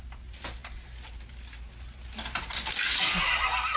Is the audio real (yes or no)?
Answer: yes